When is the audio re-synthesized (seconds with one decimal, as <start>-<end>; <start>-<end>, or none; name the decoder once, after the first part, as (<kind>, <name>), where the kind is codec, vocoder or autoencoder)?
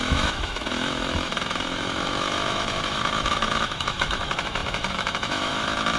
0.0-6.0 (autoencoder, DAC-VAE)